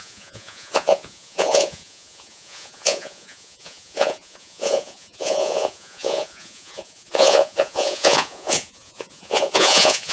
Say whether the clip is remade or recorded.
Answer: remade